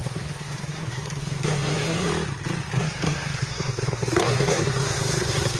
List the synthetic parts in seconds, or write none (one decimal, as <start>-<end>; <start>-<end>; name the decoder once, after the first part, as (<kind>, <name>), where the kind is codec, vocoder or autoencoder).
0.0-2.1 (codec, SNAC); 2.7-5.6